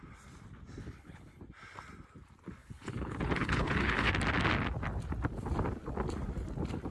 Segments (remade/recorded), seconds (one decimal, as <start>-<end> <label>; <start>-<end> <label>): 0.0-0.8 recorded; 0.8-1.4 remade; 1.4-2.6 recorded; 2.6-4.1 remade; 4.1-6.9 recorded

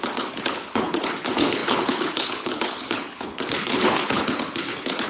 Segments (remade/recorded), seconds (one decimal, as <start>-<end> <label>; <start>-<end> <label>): 0.0-5.1 remade

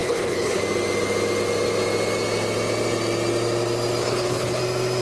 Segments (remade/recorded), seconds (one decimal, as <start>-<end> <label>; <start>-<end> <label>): 0.0-0.6 remade; 0.6-4.0 recorded; 4.0-4.6 remade; 4.6-5.0 recorded

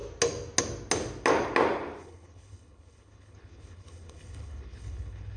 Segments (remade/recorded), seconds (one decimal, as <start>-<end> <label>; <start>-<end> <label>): 0.0-2.0 recorded; 2.0-5.4 remade